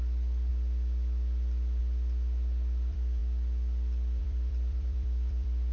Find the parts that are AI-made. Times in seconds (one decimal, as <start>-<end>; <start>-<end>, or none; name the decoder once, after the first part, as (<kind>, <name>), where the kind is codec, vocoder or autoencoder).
0.0-0.5 (vocoder, BigVGAN v2); 1.8-3.2; 4.2-5.7